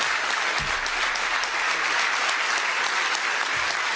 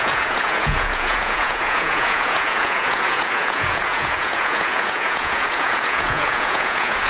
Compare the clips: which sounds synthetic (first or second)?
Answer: second